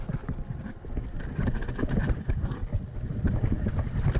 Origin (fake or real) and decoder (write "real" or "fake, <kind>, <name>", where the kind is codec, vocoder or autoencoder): real